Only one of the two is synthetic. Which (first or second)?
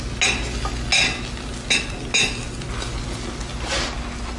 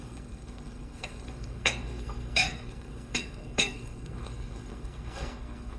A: second